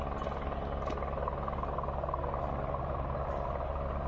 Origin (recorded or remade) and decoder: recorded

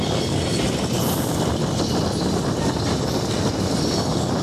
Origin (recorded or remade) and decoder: recorded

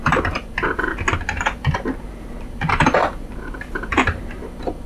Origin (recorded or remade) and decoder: remade, vocoder, BigVGAN v2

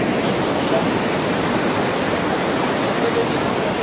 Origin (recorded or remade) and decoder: recorded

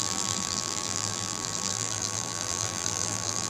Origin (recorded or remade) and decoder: remade, vocoder, BigVGAN v2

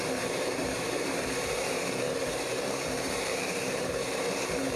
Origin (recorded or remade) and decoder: remade, vocoder, BigVGAN v2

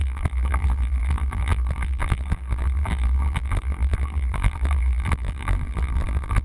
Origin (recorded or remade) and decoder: remade, vocoder, BigVGAN v2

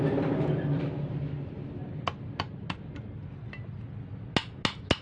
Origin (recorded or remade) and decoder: recorded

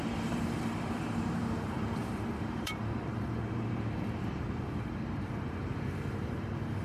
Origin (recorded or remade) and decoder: remade, vocoder, BigVGAN v2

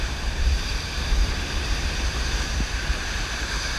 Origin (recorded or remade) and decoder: remade, vocoder, BigVGAN v2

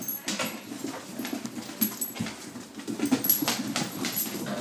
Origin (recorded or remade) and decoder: recorded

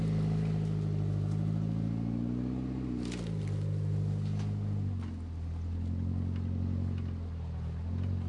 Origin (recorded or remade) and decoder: recorded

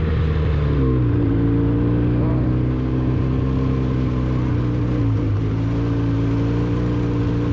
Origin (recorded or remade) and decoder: recorded